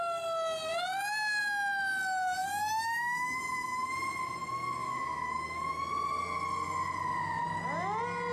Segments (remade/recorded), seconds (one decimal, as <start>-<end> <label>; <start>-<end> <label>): 0.0-2.4 recorded; 2.4-3.9 remade; 3.9-4.8 recorded; 4.8-5.9 remade; 5.9-8.3 recorded

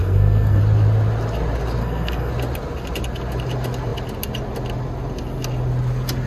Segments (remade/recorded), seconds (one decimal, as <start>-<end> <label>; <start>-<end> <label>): 0.0-0.6 remade; 0.6-1.8 recorded; 1.8-2.3 remade; 2.3-6.3 recorded

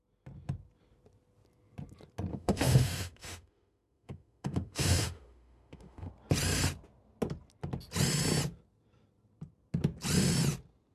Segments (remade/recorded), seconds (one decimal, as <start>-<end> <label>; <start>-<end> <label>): 0.0-2.3 recorded; 2.3-6.1 remade; 6.1-10.9 recorded

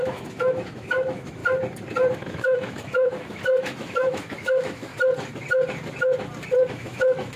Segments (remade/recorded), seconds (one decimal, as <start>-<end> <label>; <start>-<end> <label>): 0.0-1.4 remade; 1.4-2.1 recorded; 2.1-4.9 remade; 4.9-6.7 recorded; 6.7-7.4 remade

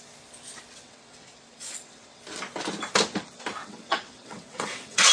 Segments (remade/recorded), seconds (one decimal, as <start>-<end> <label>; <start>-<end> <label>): 0.0-0.7 recorded; 0.7-2.2 remade; 2.2-3.6 recorded; 3.6-5.1 remade

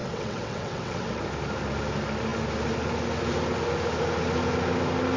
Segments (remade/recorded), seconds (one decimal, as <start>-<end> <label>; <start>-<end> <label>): 0.0-1.2 remade; 1.2-5.2 recorded